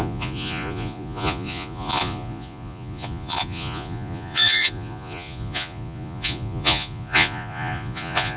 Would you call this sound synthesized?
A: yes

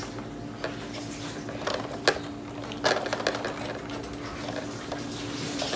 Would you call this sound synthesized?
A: no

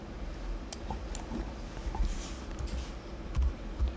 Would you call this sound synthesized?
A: yes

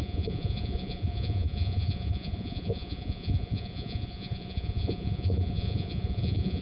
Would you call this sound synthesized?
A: yes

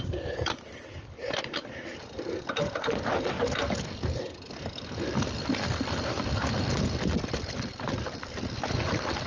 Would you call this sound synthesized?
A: yes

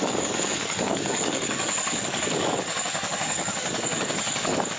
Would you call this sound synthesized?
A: yes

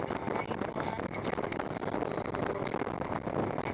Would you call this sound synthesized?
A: no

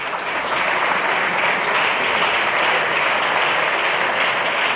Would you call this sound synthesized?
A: no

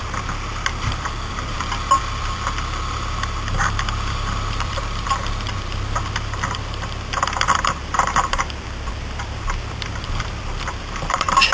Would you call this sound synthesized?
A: yes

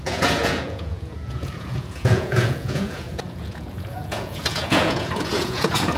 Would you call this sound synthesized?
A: yes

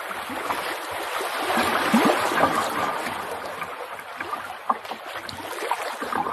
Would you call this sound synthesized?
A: no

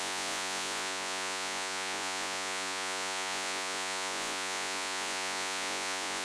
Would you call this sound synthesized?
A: yes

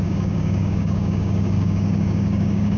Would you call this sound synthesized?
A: yes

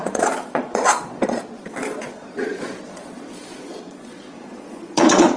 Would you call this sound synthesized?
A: yes